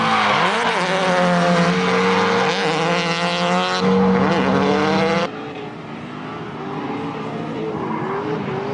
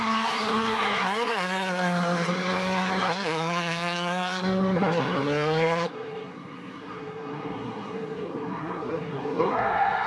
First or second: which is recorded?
first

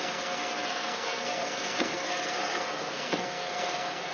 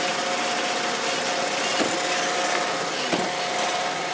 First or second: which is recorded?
second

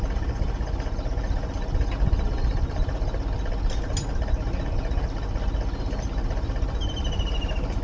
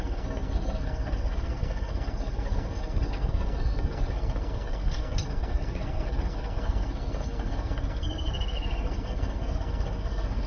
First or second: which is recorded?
first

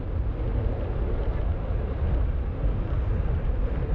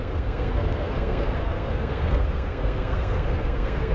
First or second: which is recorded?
first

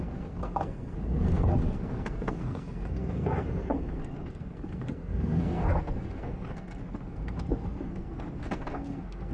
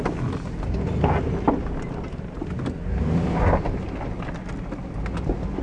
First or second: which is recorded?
second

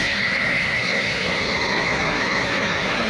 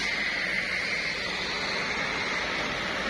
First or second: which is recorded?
second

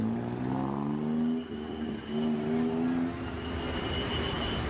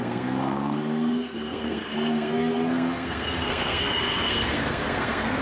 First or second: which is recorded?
first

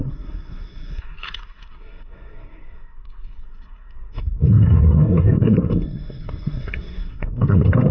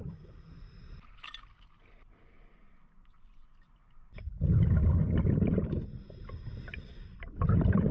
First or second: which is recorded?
second